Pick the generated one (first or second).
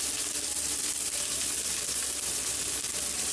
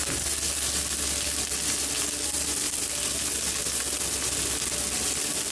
first